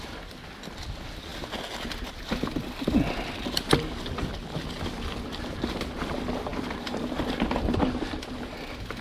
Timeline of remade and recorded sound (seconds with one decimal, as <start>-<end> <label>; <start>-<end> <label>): 0.0-9.0 recorded